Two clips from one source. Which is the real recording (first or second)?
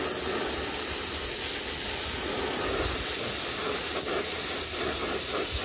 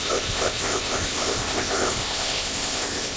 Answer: first